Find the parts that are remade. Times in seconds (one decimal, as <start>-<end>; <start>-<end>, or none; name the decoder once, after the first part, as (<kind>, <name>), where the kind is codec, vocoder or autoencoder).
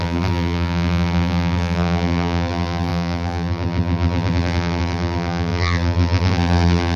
0.0-7.0 (vocoder, BigVGAN v2)